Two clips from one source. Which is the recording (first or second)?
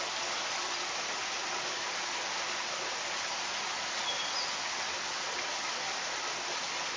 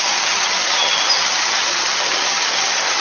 first